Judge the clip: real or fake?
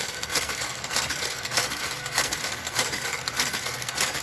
fake